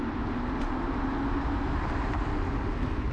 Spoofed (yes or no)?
no